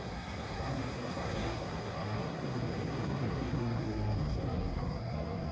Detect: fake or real fake